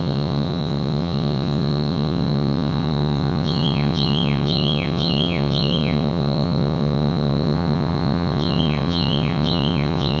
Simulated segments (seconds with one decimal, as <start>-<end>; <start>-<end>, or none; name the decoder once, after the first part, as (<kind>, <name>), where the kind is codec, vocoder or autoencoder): 0.0-10.2 (vocoder, WaveNeXt)